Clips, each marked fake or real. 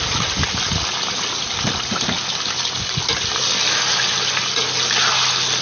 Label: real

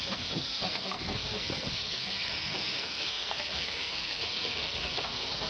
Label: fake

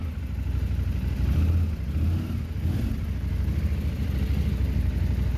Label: real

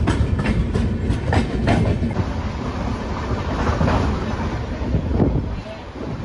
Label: real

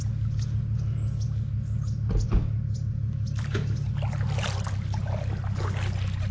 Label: real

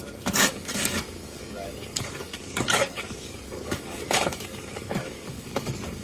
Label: fake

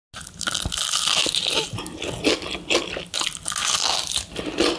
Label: real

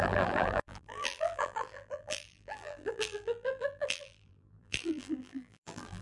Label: fake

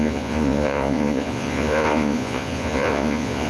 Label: fake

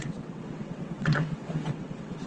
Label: fake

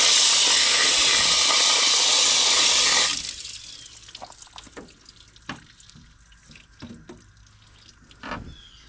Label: real